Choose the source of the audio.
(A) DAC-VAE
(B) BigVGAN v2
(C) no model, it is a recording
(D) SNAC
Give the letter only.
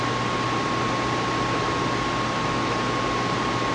B